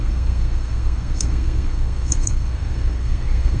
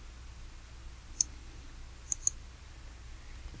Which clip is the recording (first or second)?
second